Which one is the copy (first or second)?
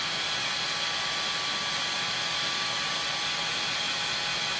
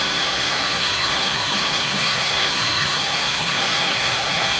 second